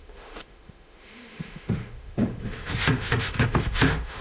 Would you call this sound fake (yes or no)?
yes